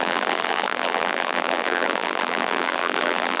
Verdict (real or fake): fake